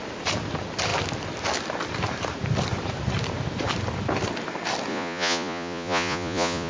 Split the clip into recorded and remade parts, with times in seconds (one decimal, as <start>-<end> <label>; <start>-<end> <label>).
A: 0.0-4.9 recorded; 4.9-6.7 remade